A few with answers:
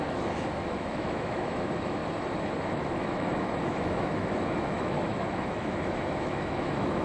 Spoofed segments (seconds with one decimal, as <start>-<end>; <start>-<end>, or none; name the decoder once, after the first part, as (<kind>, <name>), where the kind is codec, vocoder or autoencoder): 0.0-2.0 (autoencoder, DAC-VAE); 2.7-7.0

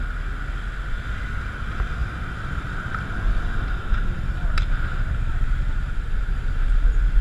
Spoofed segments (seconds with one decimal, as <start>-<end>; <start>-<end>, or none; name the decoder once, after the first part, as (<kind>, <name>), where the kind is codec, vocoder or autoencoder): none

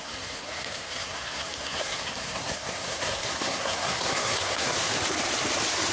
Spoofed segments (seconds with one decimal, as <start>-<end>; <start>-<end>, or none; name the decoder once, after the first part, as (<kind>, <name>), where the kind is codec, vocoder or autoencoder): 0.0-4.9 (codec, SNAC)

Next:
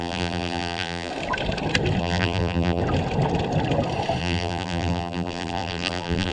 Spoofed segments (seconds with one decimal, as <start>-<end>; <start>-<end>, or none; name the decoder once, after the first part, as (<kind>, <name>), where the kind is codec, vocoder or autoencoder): 0.0-1.1 (vocoder, BigVGAN v2); 2.0-2.8; 4.2-6.3

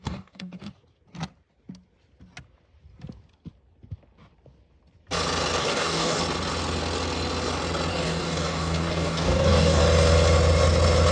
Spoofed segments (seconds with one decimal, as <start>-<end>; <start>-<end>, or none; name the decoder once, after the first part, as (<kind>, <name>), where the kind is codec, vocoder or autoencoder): 0.0-0.7 (codec, DAC); 5.6-6.2; 7.9-9.8